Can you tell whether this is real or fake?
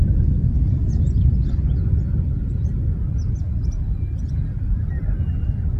real